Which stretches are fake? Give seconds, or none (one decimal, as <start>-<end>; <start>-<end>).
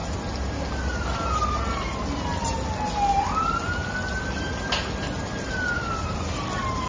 none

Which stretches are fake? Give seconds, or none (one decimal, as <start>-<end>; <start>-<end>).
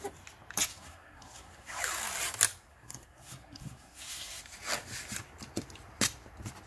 0.7-1.8; 2.7-4.4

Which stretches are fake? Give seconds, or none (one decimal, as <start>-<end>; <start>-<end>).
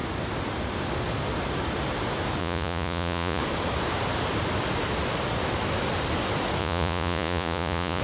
2.4-3.4; 6.6-8.0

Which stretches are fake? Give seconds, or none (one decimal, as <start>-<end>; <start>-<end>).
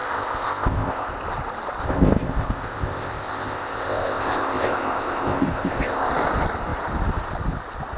0.0-1.1; 1.8-6.1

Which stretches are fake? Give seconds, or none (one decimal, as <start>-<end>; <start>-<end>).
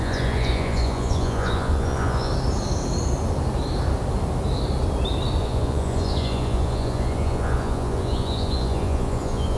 0.0-2.3; 5.4-9.6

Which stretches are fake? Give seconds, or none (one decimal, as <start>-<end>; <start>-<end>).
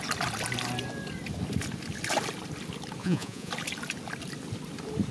3.0-3.5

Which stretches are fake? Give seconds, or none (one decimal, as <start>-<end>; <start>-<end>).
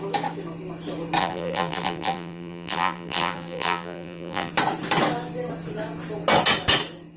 1.2-4.5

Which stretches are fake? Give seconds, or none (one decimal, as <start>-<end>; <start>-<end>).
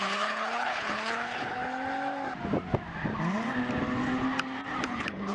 0.0-1.6; 4.8-5.3